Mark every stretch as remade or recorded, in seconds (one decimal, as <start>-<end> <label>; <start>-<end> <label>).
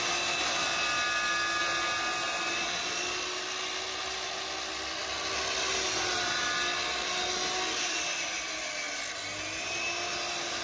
0.0-10.6 recorded